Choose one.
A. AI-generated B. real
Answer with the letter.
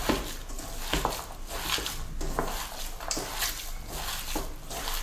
B